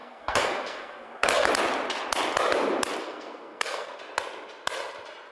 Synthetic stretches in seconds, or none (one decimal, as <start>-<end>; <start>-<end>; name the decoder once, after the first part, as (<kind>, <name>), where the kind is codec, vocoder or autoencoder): 0.0-1.5 (codec, SNAC); 3.0-4.0